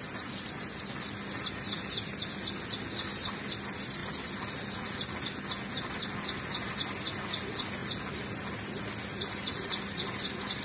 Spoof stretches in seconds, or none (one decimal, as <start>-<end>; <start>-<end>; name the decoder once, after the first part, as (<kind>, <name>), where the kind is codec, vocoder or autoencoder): none